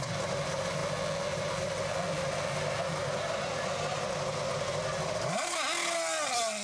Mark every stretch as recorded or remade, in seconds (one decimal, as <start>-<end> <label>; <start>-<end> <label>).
0.0-6.6 recorded

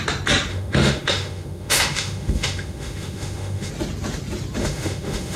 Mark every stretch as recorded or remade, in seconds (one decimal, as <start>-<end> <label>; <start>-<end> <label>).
0.0-0.5 recorded; 0.5-3.7 remade; 3.7-4.6 recorded; 4.6-5.4 remade

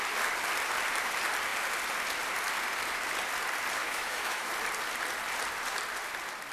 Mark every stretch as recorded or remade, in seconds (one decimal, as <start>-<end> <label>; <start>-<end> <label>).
0.0-3.8 recorded; 3.8-4.5 remade; 4.5-6.5 recorded

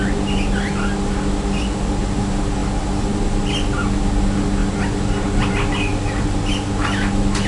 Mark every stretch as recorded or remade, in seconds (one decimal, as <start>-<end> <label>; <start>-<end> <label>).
0.0-7.5 recorded